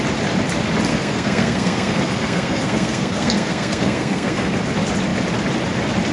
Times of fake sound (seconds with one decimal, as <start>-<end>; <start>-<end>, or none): 0.9-4.6